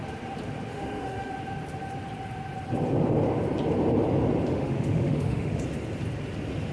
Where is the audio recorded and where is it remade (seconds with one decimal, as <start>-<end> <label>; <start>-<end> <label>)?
0.0-0.7 recorded; 0.7-1.3 remade; 1.3-4.5 recorded; 4.5-5.6 remade; 5.6-6.7 recorded